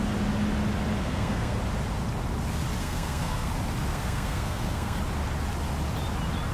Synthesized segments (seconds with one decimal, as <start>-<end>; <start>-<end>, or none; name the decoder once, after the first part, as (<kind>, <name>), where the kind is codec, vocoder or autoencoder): 1.0-1.6 (codec, SNAC); 2.8-3.5; 3.9-5.0